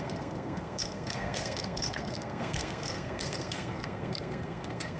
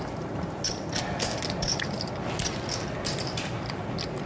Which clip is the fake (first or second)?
first